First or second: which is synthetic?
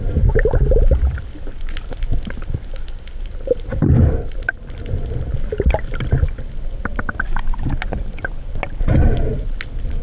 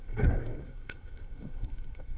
second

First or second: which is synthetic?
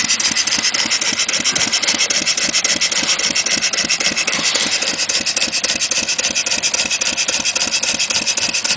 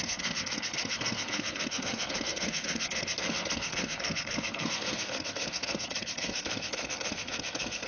second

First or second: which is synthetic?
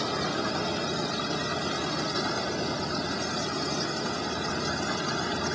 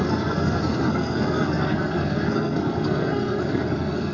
second